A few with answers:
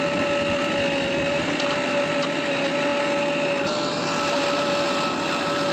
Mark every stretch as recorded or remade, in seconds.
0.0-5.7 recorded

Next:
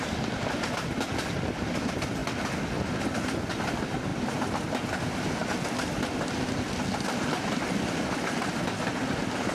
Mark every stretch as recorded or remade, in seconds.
0.0-9.5 recorded

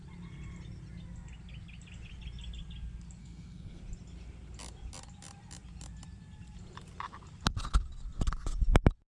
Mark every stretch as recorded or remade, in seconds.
0.0-3.2 recorded; 3.2-3.8 remade; 3.8-9.1 recorded

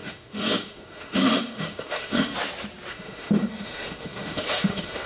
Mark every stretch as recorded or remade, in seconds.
0.0-2.3 remade; 2.3-2.9 recorded; 2.9-5.1 remade

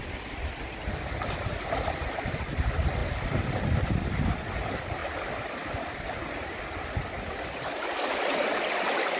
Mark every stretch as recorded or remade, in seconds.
0.0-9.2 recorded

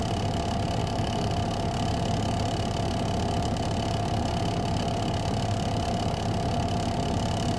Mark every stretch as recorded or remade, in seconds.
0.0-0.8 recorded; 0.8-1.3 remade; 1.3-7.6 recorded

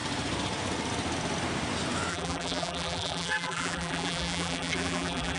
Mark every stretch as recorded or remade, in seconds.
0.0-2.1 recorded; 2.1-5.4 remade

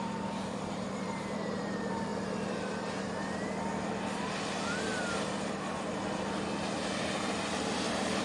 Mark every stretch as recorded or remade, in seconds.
0.0-2.1 remade; 2.1-7.0 recorded; 7.0-8.2 remade